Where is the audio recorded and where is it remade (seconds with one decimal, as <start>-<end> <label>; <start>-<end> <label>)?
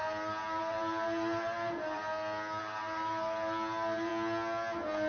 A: 0.0-0.6 recorded; 0.6-2.0 remade; 2.0-2.6 recorded; 2.6-4.1 remade; 4.1-5.1 recorded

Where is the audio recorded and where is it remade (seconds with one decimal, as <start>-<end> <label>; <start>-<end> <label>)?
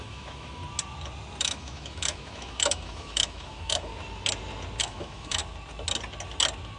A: 0.0-0.6 remade; 0.6-1.4 recorded; 1.4-3.9 remade; 3.9-4.8 recorded; 4.8-5.4 remade; 5.4-6.8 recorded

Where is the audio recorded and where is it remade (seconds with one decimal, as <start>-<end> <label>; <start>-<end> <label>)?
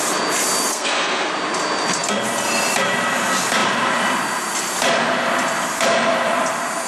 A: 0.0-0.7 recorded; 0.7-1.3 remade; 1.3-6.9 recorded